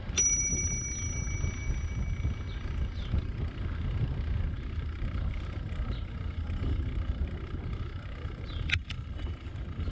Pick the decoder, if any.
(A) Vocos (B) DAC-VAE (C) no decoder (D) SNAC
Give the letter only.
C